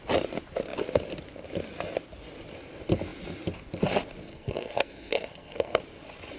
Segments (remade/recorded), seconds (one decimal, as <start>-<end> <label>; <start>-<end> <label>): 0.0-4.3 recorded; 4.3-5.8 remade; 5.8-6.4 recorded